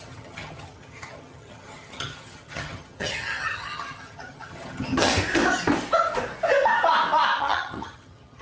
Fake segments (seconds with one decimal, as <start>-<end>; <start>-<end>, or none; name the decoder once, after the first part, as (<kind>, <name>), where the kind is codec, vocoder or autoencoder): 0.0-5.1 (vocoder, HiFi-GAN); 7.4-8.4